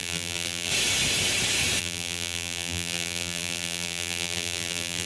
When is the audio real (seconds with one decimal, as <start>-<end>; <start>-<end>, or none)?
0.7-1.8